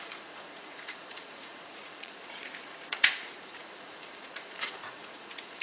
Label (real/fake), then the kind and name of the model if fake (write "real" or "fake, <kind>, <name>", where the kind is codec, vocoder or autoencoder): fake, vocoder, Vocos